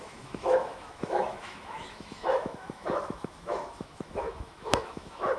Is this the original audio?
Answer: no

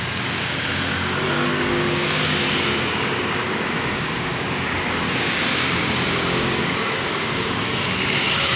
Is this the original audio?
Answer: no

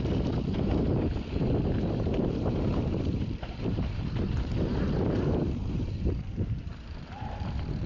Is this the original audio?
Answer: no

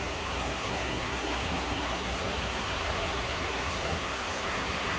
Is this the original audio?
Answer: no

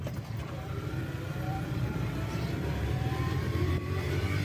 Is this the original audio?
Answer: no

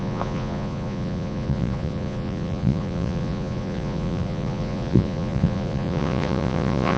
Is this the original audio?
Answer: no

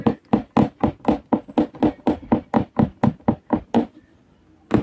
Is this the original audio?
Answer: yes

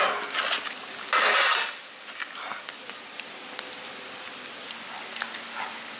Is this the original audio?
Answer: yes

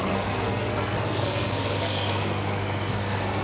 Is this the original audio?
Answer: no